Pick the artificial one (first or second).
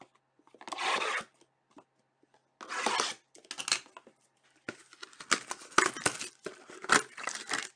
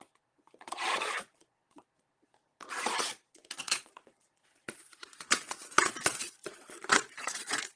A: second